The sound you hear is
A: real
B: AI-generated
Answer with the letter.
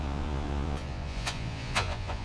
B